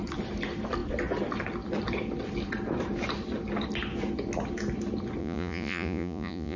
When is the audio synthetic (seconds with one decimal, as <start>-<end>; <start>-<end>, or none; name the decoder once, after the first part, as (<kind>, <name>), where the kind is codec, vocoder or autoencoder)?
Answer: 5.2-6.6 (vocoder, Vocos)